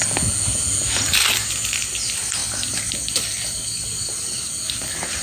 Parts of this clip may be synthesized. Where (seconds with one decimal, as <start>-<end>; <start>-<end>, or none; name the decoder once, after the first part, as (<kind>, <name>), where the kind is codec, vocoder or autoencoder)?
none